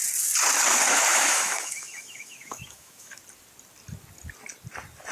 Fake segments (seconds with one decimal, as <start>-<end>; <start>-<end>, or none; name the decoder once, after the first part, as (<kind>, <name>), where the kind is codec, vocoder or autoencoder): 1.1-3.2 (autoencoder, DAC-VAE)